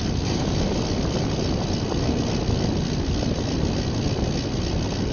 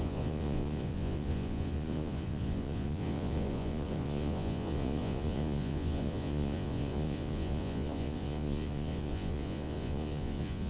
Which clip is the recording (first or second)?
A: first